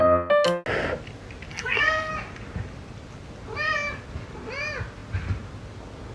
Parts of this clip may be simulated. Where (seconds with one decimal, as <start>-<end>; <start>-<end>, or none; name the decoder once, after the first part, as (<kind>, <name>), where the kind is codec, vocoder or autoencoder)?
1.5-2.1 (codec, SNAC)